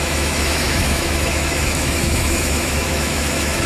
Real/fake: fake